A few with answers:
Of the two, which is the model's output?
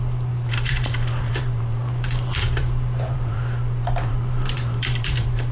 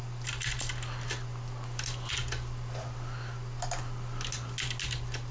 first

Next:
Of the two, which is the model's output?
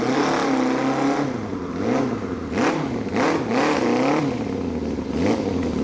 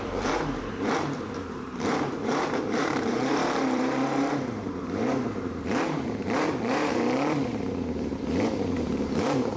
second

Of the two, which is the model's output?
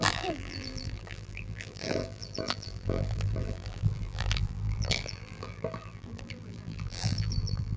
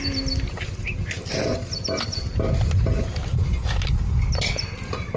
first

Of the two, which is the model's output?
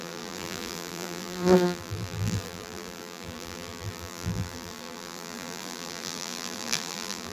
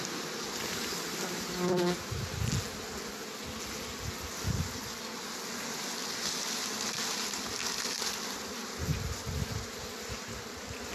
first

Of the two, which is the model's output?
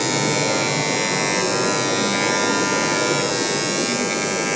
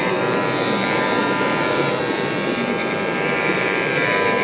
second